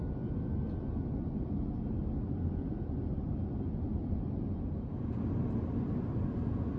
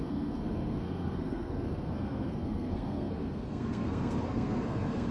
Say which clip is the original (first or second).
first